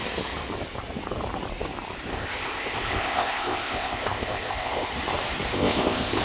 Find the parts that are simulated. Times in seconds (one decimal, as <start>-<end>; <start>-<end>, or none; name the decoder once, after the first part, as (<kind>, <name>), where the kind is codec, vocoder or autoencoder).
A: 2.1-4.9 (codec, ZipCodec); 5.5-6.2